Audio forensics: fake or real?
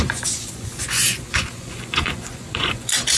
fake